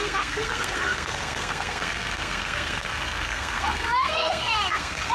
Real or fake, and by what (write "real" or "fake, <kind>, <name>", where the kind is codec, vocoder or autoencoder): fake, codec, SNAC